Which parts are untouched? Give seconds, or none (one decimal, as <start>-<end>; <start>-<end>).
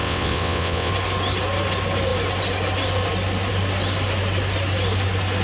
0.9-5.4